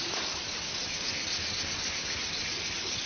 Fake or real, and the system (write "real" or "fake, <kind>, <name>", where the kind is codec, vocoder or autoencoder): real